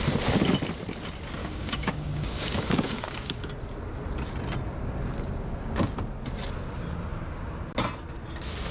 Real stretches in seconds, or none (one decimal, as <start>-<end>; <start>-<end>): 0.0-1.4; 3.5-8.7